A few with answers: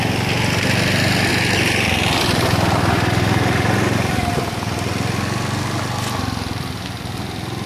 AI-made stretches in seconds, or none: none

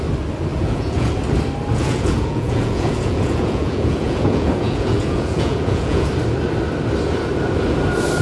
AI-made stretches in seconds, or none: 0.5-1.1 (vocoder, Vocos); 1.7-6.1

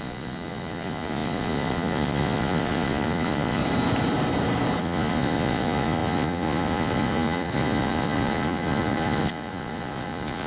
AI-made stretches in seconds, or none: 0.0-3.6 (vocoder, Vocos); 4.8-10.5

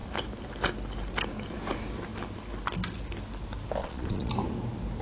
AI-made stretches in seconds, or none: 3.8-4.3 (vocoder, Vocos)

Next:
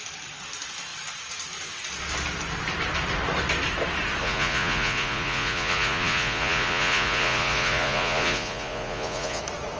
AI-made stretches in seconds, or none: 4.2-9.4 (vocoder, Vocos)

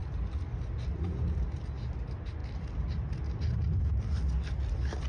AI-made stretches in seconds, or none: none

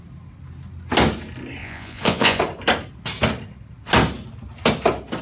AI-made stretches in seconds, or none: 1.6-2.4 (vocoder, Vocos)

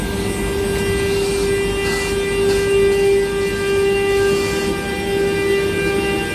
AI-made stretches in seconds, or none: none